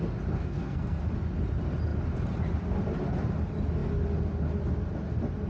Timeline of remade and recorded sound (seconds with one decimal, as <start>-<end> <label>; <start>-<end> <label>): 0.0-0.4 recorded; 0.4-1.0 remade; 1.0-5.5 recorded